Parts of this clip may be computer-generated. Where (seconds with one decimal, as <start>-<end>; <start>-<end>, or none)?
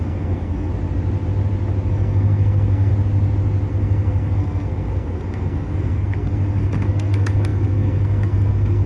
0.0-0.7; 1.9-2.9; 3.7-8.9